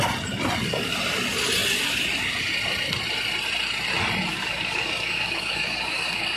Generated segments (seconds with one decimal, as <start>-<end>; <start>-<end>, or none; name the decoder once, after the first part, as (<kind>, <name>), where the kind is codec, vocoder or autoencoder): 4.3-6.4 (codec, DAC)